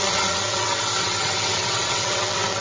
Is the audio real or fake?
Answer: fake